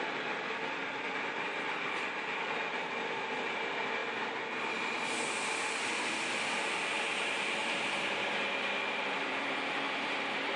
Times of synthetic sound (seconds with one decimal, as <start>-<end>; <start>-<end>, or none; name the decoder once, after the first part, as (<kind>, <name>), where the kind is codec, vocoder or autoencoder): 0.0-4.0 (vocoder, BigVGAN v2); 9.1-10.6